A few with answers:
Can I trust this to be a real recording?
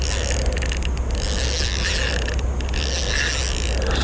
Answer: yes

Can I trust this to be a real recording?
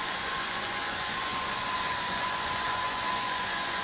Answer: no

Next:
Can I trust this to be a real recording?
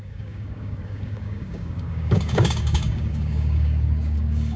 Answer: no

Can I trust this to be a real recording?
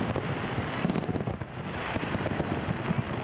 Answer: yes